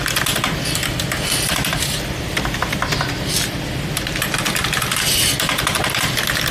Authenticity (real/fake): fake